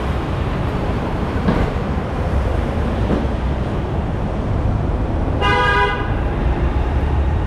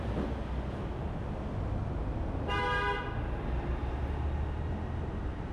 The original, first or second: second